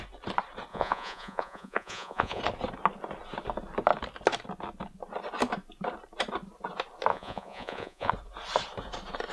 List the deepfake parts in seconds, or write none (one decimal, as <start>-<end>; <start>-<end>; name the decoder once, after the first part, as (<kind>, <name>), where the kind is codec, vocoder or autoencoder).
0.7-2.4 (vocoder, Vocos); 7.1-8.1